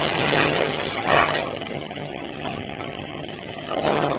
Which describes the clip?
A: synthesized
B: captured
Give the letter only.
A